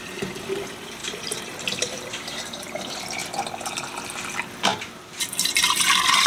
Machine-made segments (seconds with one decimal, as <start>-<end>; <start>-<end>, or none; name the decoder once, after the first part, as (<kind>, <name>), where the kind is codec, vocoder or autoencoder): 1.0-2.7 (vocoder, BigVGAN v2); 4.7-5.8